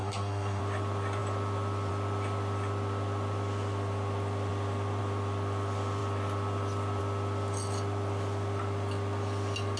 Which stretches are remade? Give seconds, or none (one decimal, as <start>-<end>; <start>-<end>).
0.0-0.6